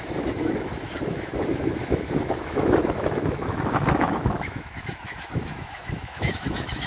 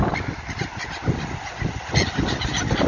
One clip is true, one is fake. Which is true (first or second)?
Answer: second